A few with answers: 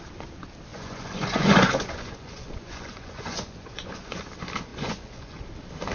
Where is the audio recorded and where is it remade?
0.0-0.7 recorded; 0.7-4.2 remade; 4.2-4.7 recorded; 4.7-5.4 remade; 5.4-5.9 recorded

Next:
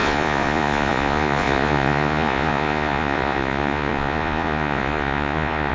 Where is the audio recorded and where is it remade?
0.0-5.7 remade

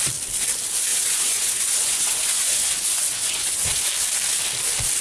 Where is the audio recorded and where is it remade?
0.0-0.9 recorded; 0.9-3.9 remade; 3.9-5.0 recorded

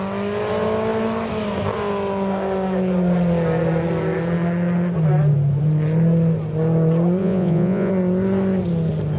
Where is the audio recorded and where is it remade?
0.0-7.2 recorded; 7.2-7.9 remade; 7.9-9.2 recorded

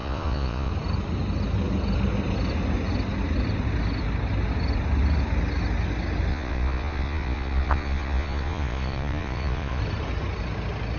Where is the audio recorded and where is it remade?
0.0-0.7 remade; 0.7-6.3 recorded; 6.3-9.8 remade; 9.8-11.0 recorded